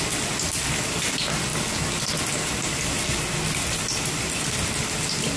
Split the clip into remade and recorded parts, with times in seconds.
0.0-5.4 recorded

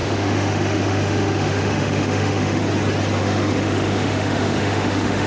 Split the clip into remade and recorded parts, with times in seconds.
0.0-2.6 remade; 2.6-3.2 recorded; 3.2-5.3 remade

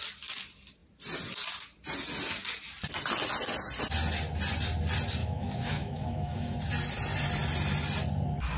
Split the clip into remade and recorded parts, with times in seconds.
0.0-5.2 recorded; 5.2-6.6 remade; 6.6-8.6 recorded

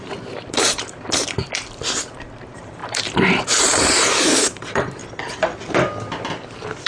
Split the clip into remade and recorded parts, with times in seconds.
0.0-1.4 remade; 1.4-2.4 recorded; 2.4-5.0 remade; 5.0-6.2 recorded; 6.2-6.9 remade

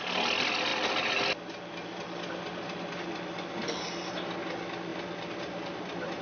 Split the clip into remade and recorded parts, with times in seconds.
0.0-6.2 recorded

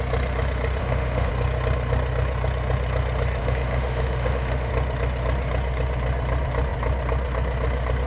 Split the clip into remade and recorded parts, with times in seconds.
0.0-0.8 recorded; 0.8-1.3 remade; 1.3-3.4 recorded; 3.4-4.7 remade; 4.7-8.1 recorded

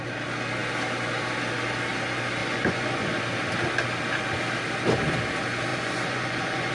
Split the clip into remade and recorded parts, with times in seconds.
0.0-2.4 recorded; 2.4-3.2 remade; 3.2-5.7 recorded; 5.7-6.7 remade